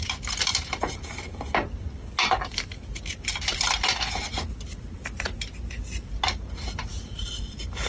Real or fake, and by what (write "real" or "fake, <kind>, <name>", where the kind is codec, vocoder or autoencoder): real